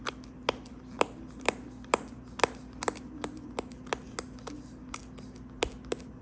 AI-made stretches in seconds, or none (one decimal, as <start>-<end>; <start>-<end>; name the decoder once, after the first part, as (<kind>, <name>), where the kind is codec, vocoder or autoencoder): none